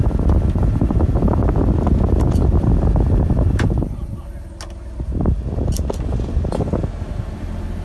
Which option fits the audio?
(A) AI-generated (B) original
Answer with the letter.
B